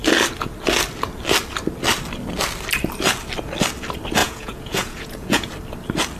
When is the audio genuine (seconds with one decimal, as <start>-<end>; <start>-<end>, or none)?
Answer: 0.0-4.2; 5.5-6.2